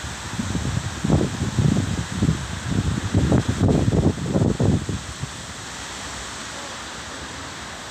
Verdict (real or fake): real